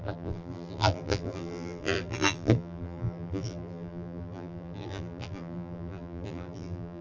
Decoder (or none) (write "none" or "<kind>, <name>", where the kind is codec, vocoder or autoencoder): vocoder, BigVGAN v2